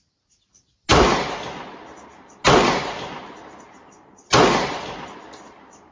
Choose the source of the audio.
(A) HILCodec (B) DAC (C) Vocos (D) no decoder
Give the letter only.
D